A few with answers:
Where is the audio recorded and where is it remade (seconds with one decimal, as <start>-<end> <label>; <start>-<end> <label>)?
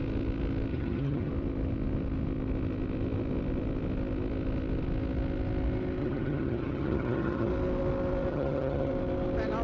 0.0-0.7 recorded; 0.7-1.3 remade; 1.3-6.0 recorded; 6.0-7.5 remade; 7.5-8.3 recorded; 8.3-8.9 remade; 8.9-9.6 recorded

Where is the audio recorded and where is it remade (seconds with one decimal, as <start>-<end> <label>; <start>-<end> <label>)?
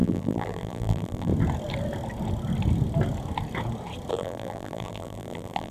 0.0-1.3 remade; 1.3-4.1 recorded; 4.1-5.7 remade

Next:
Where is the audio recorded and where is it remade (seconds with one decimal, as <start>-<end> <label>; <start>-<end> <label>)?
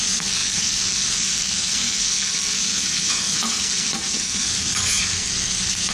0.0-5.9 remade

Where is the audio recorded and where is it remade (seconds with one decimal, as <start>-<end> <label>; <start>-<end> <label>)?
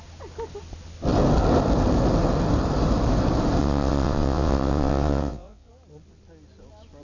0.0-3.6 recorded; 3.6-5.7 remade; 5.7-7.0 recorded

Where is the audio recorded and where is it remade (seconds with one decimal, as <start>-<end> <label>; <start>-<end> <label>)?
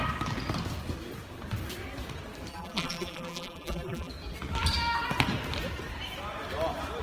0.0-2.5 recorded; 2.5-4.1 remade; 4.1-7.0 recorded